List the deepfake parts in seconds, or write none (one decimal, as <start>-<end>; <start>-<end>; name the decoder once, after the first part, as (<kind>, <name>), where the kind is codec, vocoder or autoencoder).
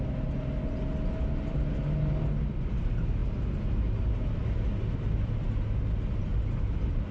none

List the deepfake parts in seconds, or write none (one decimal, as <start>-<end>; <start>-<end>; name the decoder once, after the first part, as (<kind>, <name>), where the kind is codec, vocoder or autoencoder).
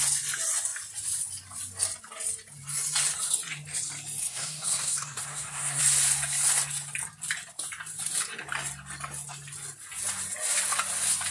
4.2-5.8 (codec, SNAC)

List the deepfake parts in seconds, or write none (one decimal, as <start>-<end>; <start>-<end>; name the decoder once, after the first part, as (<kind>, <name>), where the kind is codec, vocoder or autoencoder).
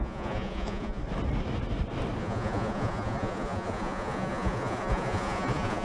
0.0-1.0 (vocoder, Vocos); 2.2-5.8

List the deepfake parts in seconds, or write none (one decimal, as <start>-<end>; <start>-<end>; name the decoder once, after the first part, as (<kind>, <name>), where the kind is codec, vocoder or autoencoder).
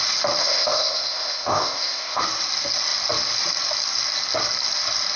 0.4-2.2 (codec, ZipCodec)